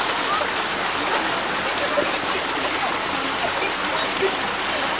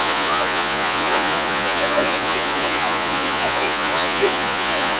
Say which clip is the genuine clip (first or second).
first